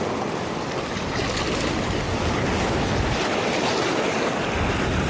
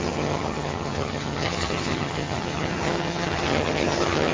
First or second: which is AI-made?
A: second